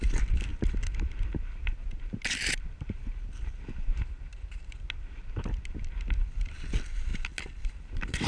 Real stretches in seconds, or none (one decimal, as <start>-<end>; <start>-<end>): 0.0-8.3